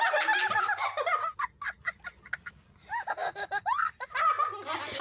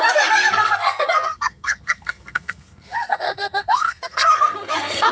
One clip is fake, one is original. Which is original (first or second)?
first